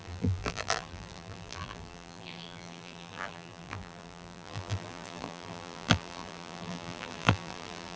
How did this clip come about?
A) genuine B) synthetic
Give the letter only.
B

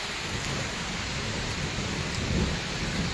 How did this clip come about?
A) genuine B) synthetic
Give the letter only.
B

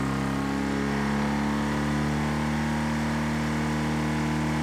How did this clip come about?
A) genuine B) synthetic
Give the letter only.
A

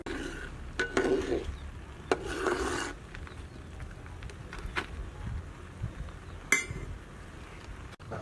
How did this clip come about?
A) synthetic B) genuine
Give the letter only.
B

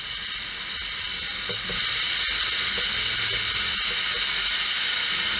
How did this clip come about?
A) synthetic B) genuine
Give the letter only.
B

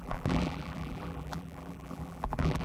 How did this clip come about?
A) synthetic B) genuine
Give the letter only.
A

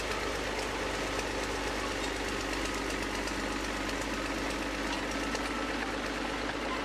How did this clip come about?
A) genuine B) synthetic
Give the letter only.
A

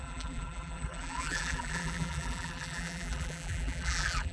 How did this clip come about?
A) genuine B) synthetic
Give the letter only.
B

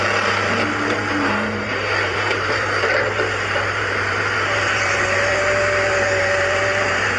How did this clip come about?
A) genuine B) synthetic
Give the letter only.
B